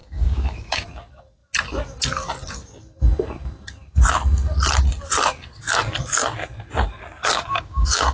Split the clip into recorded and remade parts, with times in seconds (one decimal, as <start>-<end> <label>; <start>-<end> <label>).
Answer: 0.0-0.8 remade; 0.8-7.2 recorded; 7.2-8.1 remade